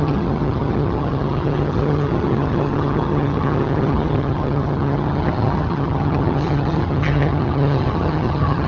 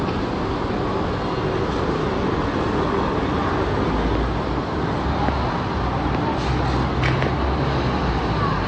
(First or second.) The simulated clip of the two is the first